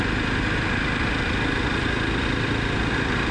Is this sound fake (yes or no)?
no